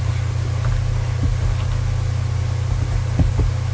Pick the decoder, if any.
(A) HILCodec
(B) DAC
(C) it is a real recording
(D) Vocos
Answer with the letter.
C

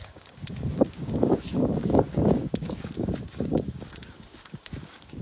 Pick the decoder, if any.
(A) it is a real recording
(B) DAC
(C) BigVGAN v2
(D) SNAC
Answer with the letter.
B